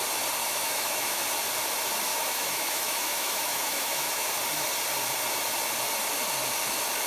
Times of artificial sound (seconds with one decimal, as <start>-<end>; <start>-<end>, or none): 0.4-1.2; 2.1-4.3